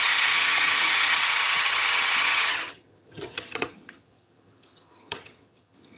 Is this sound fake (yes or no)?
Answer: yes